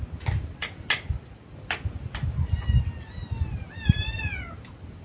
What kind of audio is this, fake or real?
real